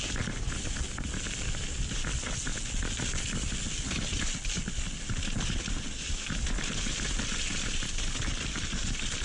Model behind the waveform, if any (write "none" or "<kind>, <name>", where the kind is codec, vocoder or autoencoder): none